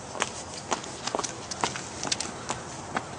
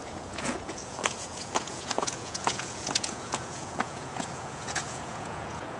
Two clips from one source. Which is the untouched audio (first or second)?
first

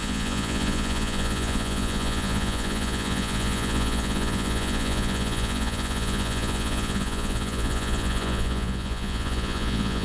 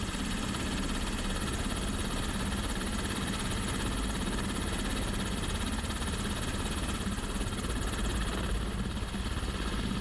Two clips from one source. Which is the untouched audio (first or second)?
second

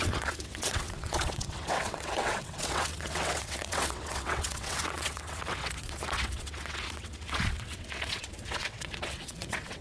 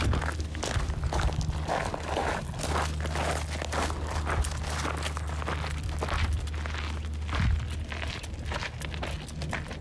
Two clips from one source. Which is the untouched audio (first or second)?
second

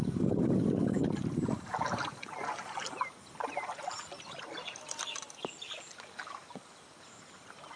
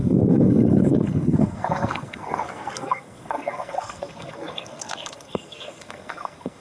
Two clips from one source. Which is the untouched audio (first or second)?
first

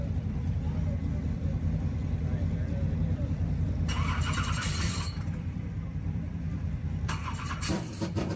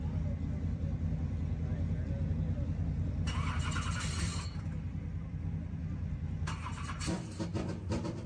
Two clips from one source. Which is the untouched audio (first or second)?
second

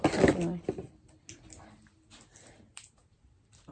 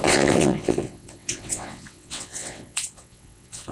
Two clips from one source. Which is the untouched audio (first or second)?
first